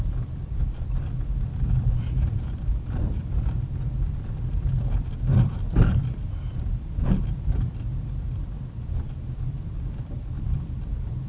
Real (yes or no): no